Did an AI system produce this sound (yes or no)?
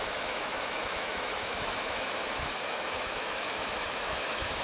yes